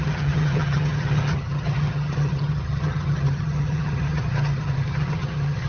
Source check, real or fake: fake